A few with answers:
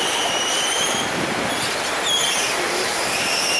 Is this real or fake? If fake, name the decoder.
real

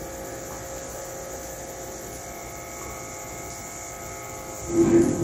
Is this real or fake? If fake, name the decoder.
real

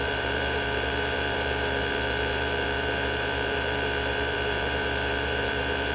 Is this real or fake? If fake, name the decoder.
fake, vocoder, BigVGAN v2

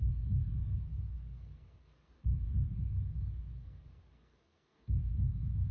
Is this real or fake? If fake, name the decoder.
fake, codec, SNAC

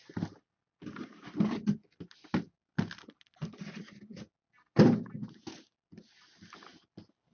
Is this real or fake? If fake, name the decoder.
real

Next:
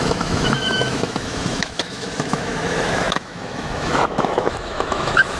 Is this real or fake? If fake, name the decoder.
fake, autoencoder, DAC-VAE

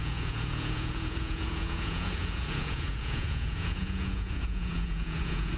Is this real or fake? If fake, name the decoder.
fake, vocoder, Vocos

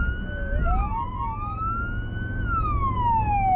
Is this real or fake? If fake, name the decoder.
real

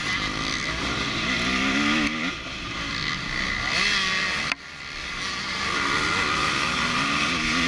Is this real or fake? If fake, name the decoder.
real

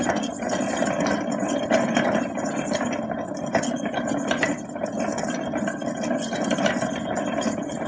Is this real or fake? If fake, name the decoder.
real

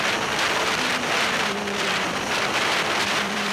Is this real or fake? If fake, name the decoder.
fake, vocoder, BigVGAN v2